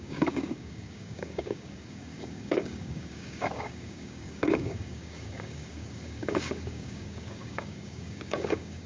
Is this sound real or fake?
fake